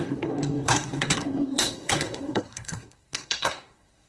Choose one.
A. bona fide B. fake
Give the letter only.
B